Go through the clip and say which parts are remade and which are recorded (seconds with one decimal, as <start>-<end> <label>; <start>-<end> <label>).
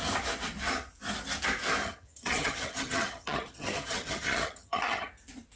0.0-1.8 recorded; 1.8-5.1 remade; 5.1-5.5 recorded